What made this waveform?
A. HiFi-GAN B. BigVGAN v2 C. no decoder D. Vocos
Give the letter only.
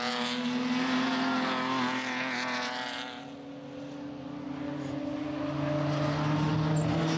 C